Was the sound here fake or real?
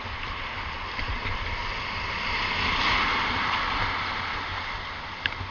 real